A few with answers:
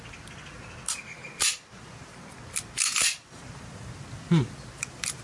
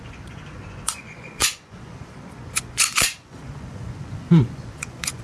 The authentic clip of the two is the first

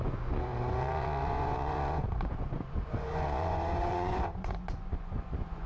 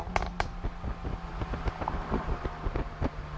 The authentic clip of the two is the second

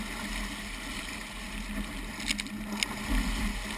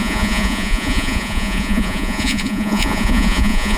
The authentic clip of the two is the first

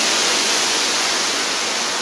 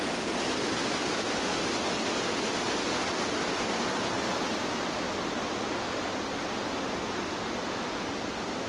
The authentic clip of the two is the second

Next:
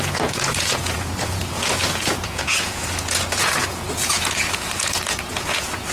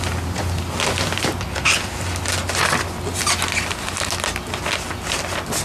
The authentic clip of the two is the second